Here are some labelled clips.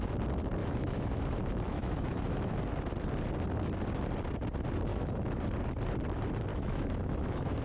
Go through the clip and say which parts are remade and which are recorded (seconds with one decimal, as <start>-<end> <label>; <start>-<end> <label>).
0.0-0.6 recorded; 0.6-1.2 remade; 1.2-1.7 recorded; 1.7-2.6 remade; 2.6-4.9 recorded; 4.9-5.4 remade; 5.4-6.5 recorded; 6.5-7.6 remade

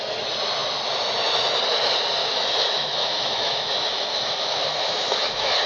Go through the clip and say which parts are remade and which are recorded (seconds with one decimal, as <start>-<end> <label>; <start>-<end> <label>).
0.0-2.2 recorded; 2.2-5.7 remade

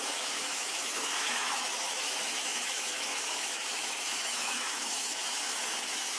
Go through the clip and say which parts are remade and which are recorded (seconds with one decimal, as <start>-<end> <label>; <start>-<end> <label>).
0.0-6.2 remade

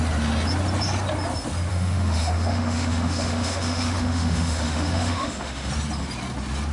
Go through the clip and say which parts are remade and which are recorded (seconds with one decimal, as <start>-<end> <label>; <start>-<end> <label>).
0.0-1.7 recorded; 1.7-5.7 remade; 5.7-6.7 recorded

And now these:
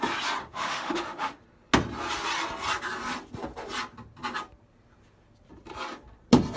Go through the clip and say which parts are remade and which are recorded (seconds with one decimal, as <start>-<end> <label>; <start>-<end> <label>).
0.0-0.4 recorded; 0.4-1.4 remade; 1.4-6.6 recorded

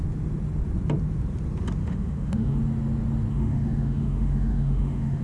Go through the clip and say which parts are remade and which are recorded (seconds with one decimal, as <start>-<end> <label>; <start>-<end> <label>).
0.0-1.8 recorded; 1.8-2.6 remade; 2.6-3.3 recorded; 3.3-5.2 remade

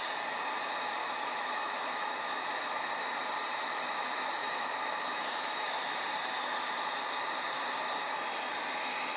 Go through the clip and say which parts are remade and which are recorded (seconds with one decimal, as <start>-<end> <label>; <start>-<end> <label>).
0.0-1.0 recorded; 1.0-2.5 remade; 2.5-4.4 recorded; 4.4-6.0 remade; 6.0-9.2 recorded

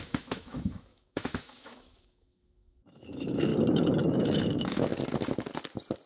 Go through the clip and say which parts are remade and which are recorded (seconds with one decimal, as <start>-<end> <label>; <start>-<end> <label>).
0.0-3.5 remade; 3.5-4.1 recorded; 4.1-4.9 remade; 4.9-6.1 recorded